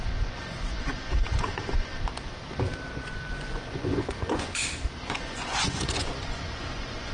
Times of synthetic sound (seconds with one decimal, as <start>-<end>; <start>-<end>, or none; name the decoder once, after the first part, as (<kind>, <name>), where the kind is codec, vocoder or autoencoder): 0.0-1.9 (vocoder, Vocos); 2.9-4.6; 5.2-7.1